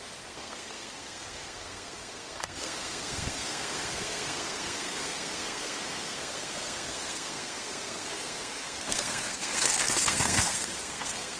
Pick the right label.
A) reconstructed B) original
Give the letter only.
A